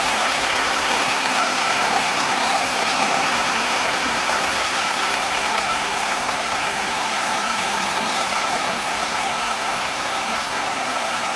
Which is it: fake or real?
fake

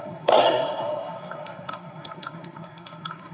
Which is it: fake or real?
fake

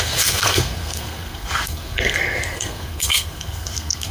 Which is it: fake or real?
fake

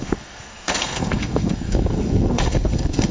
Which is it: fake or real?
fake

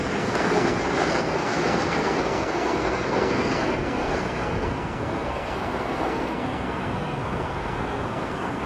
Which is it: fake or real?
fake